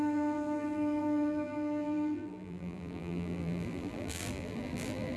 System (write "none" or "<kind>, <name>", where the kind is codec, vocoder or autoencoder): vocoder, BigVGAN v2